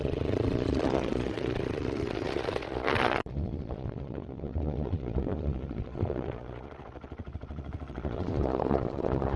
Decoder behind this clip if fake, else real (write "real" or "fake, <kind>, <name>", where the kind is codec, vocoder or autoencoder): fake, vocoder, Vocos